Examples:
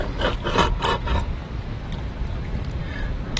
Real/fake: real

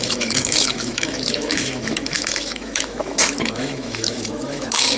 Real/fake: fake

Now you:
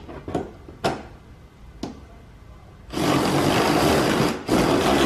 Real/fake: real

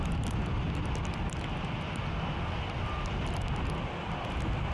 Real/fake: real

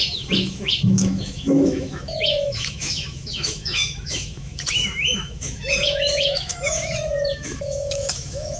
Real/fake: fake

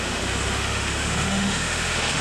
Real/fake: fake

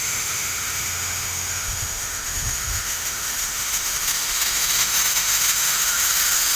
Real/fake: fake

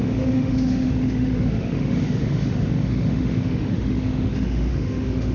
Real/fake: fake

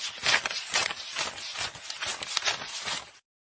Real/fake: real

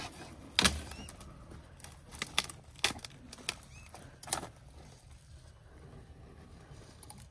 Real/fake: real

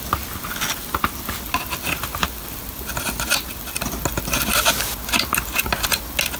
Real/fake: real